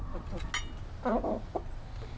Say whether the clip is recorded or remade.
recorded